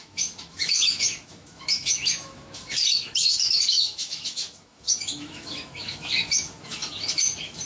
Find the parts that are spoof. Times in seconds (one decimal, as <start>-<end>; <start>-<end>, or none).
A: 0.0-7.7